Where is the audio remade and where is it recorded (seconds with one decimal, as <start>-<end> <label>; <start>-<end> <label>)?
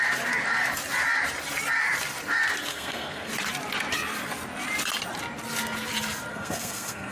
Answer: 0.0-2.7 recorded; 2.7-3.3 remade; 3.3-6.3 recorded; 6.3-7.1 remade